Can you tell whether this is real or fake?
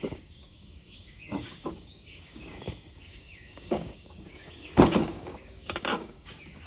fake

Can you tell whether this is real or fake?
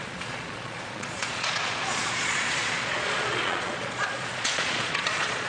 fake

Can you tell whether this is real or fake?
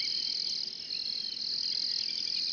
real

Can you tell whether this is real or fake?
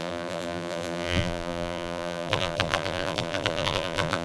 fake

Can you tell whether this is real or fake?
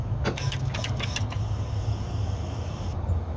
fake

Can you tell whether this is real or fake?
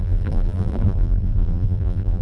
fake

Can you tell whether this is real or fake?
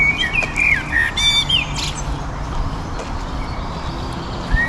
real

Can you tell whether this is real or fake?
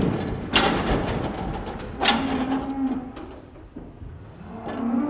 real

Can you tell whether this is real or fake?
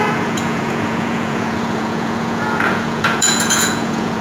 fake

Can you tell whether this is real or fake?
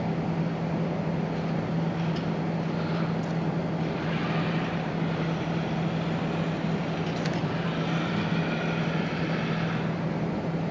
real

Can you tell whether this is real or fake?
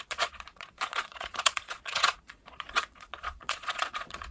fake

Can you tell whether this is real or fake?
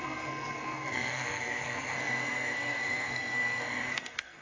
fake